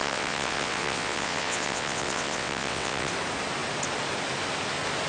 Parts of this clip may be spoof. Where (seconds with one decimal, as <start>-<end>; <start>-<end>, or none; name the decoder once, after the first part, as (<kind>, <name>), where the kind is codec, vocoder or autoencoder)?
0.0-3.1 (vocoder, WaveNeXt)

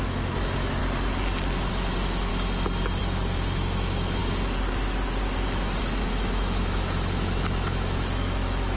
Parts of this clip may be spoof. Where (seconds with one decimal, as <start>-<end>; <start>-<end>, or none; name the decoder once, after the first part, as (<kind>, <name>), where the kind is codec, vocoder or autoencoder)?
0.0-0.8 (autoencoder, DAC-VAE); 1.7-2.3; 3.0-4.2; 5.8-8.8

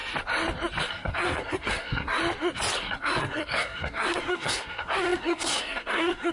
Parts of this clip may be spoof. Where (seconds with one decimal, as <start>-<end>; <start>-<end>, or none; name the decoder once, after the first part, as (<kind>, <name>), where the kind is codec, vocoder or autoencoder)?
0.9-2.2 (codec, SNAC); 2.8-6.3

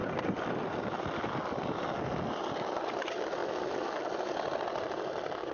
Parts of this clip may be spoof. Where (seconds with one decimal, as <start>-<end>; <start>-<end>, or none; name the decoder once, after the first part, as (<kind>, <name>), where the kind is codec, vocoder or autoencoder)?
none

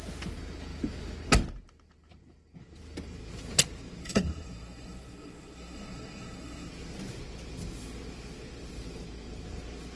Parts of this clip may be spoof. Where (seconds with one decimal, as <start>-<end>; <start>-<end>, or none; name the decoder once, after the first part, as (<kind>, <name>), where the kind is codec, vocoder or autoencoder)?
4.0-6.7 (codec, SNAC)

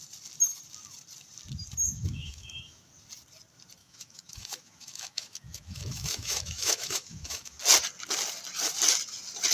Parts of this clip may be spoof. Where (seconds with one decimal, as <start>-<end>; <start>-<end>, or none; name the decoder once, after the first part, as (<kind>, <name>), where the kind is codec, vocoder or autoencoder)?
1.8-2.8 (autoencoder, DAC-VAE); 3.8-7.6

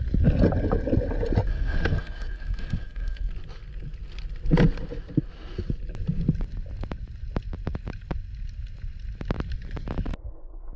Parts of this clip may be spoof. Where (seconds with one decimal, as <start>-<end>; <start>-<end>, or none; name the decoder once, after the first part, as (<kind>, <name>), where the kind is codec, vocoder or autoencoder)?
1.5-3.3 (codec, SNAC)